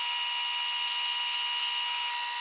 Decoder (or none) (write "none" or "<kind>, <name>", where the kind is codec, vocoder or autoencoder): none